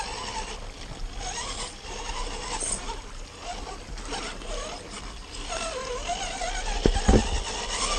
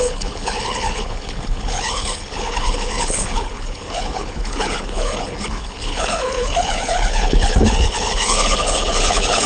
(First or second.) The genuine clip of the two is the first